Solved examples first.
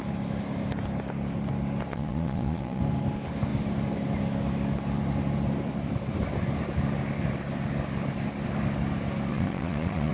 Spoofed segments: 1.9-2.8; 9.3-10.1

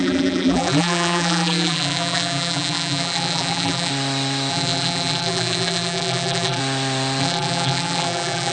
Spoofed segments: 0.0-3.9; 4.5-6.6; 7.2-8.5

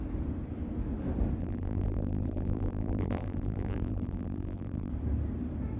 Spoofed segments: 1.4-4.9